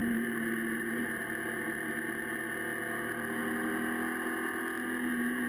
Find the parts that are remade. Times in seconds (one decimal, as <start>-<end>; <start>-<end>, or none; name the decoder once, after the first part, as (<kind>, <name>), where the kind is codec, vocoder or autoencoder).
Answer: 0.0-2.2 (vocoder, BigVGAN v2)